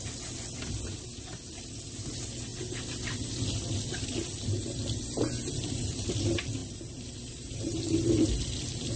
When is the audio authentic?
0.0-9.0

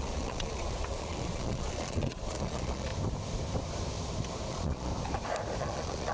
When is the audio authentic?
2.9-4.5; 4.9-5.6

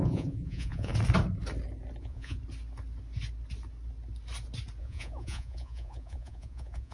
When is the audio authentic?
0.9-2.0; 2.4-4.8